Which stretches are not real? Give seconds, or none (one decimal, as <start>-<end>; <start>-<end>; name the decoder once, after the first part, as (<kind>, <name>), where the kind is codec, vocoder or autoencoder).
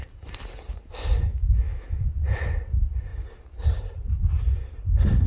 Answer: 1.3-2.1 (autoencoder, DAC-VAE)